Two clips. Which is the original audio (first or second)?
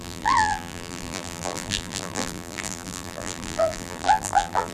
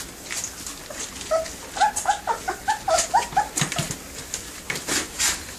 second